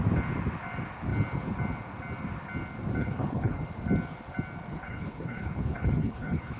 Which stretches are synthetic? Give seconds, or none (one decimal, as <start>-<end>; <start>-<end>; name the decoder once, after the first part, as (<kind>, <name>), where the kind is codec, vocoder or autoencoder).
3.0-3.6 (codec, HILCodec); 4.8-6.6